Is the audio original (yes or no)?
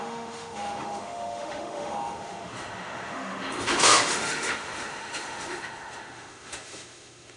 no